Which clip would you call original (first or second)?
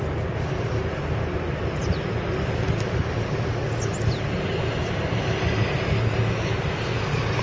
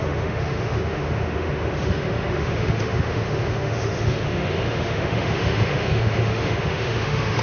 first